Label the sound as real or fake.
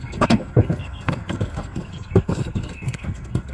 fake